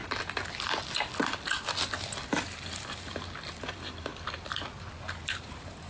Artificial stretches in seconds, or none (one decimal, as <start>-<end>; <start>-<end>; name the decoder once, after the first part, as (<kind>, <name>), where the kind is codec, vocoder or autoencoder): 3.5-4.1 (vocoder, BigVGAN v2); 4.9-5.9